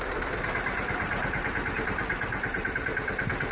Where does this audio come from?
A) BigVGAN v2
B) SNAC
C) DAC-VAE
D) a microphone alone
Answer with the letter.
D